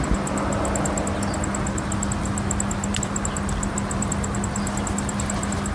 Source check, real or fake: real